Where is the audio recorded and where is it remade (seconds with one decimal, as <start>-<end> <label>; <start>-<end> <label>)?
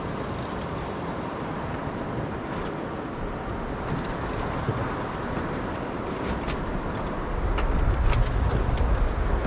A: 0.0-9.5 recorded